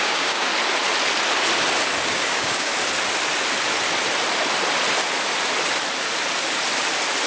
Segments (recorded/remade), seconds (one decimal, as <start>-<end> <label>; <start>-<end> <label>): 0.0-0.5 remade; 0.5-2.1 recorded; 2.1-2.7 remade; 2.7-7.3 recorded